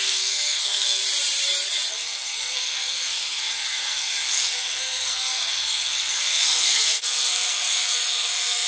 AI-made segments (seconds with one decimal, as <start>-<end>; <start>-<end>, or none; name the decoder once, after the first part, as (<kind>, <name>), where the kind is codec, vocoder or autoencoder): 0.0-1.0 (codec, SNAC); 1.9-8.7